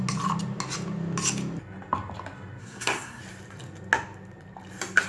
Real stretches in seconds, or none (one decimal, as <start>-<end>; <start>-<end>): 0.0-2.6; 3.2-5.1